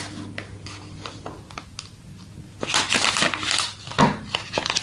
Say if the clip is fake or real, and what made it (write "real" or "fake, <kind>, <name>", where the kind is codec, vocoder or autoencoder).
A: real